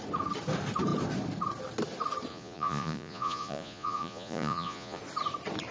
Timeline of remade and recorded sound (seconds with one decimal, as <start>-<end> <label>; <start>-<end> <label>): 0.0-2.3 recorded; 2.3-5.0 remade; 5.0-5.7 recorded